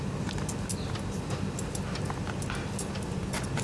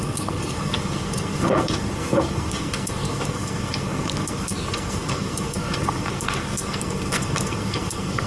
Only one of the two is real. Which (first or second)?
first